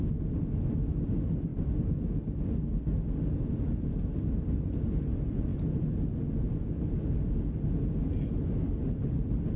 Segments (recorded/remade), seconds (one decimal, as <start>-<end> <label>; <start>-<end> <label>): 0.0-9.6 recorded